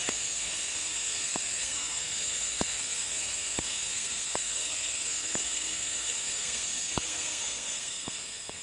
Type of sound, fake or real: fake